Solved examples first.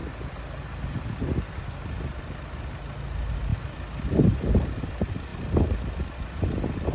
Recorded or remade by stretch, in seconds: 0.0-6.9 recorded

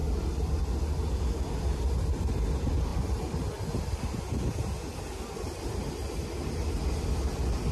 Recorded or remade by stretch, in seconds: 0.0-7.7 recorded

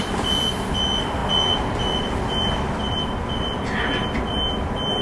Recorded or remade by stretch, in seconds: 0.0-5.0 recorded